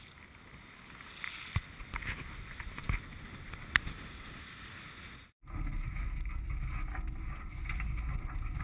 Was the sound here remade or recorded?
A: recorded